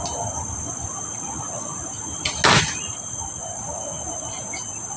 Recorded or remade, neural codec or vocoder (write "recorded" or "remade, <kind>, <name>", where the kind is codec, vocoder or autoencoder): recorded